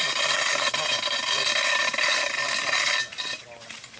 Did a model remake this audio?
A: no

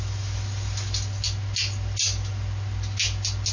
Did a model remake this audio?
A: no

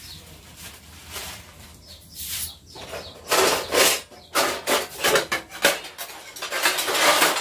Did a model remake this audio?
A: no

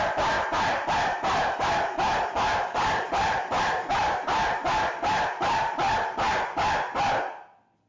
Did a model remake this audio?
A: no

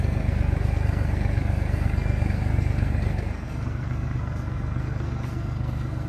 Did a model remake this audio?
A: yes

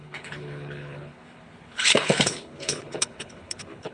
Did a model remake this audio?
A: yes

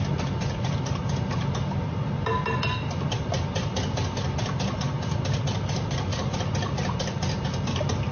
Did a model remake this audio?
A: no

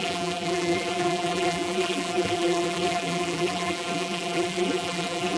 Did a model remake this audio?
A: yes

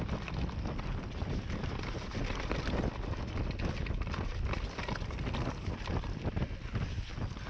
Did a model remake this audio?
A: no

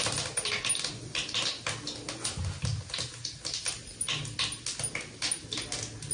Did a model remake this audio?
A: no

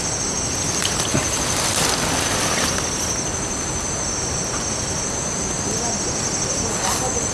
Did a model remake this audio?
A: no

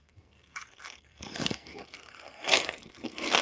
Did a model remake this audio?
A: yes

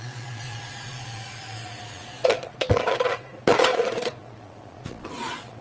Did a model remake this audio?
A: yes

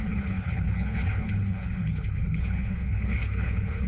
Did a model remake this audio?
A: yes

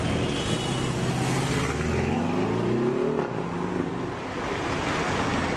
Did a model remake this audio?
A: no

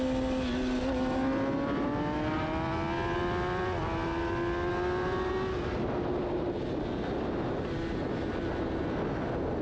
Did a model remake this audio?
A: no